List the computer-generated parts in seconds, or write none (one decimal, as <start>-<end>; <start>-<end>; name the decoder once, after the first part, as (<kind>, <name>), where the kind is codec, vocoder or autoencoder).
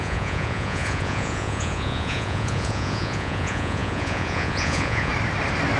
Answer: 0.0-5.1 (vocoder, Vocos)